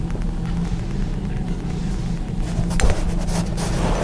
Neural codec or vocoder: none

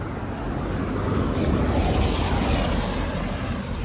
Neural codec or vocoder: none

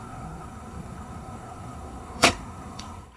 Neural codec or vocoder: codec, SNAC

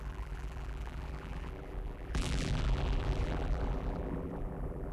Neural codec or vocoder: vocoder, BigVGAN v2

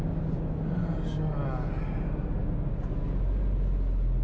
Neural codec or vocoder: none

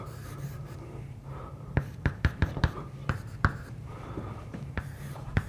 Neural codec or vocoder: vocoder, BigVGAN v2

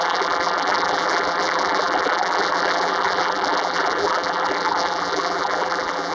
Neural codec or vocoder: vocoder, BigVGAN v2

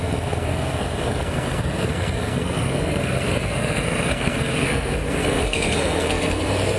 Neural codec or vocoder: codec, SNAC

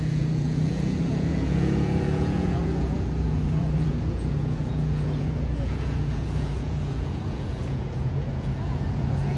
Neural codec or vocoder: vocoder, Vocos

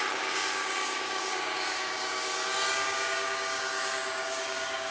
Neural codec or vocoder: codec, DAC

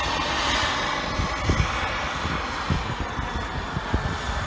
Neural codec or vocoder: none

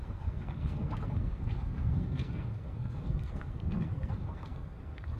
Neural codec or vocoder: codec, SNAC